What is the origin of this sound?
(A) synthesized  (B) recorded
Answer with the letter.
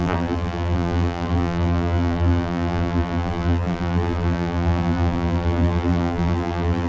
A